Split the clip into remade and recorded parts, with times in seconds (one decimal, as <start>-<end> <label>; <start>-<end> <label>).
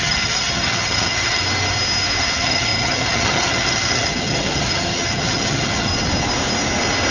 0.0-1.4 remade; 1.4-2.2 recorded; 2.2-5.9 remade; 5.9-7.1 recorded